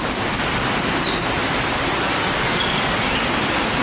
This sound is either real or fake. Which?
real